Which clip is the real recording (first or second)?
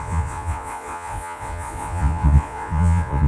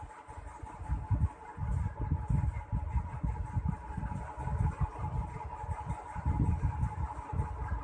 second